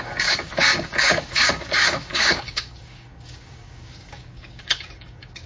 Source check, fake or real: fake